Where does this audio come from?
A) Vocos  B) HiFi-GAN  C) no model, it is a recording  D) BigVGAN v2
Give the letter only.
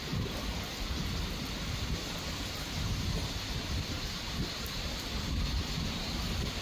C